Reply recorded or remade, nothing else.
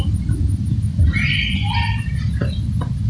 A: remade